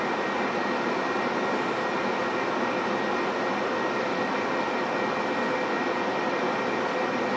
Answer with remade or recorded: recorded